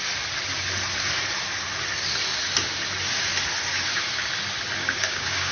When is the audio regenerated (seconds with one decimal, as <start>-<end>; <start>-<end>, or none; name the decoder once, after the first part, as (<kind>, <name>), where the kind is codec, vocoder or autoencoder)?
4.8-5.5 (codec, DAC)